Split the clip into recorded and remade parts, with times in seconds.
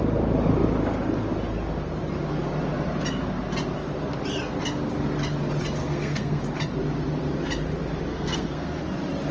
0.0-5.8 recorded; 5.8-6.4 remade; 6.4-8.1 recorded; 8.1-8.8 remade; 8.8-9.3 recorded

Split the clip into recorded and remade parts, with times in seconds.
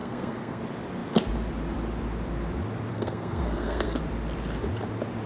0.0-0.6 remade; 0.6-2.9 recorded; 2.9-4.0 remade; 4.0-5.3 recorded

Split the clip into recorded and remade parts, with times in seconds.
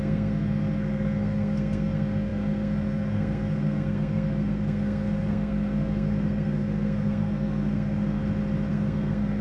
0.0-8.2 remade; 8.2-8.7 recorded; 8.7-9.4 remade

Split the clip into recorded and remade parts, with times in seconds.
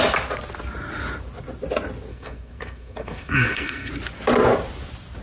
0.0-2.1 recorded; 2.1-3.9 remade; 3.9-5.2 recorded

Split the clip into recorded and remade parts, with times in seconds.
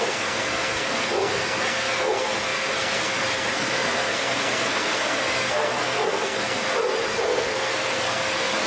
0.0-6.6 remade; 6.6-7.1 recorded; 7.1-8.7 remade